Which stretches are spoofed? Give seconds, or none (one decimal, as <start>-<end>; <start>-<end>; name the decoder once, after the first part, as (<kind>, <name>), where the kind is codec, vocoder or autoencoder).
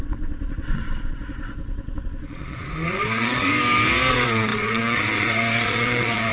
0.0-3.5 (vocoder, Vocos); 4.1-6.3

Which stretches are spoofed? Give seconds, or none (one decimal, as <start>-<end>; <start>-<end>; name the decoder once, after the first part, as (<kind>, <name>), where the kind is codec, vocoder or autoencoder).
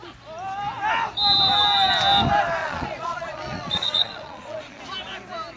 2.6-4.8 (vocoder, Vocos)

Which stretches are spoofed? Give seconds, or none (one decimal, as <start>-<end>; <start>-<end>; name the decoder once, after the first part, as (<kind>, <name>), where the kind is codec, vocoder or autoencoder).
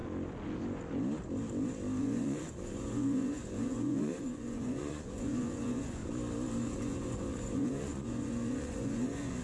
2.0-6.0 (vocoder, Vocos); 6.6-9.4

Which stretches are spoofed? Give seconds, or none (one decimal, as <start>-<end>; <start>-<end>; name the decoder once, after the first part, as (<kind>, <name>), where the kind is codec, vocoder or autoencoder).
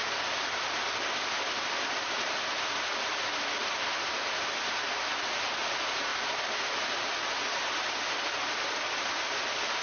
none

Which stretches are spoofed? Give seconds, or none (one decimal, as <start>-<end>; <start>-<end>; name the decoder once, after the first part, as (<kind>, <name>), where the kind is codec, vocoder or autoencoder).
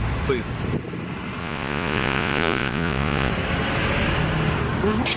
1.4-3.3 (vocoder, Vocos)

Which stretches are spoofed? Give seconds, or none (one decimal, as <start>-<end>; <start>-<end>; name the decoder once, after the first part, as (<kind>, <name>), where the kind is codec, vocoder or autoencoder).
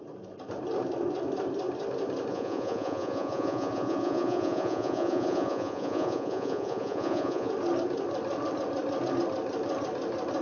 2.3-7.5 (vocoder, Vocos)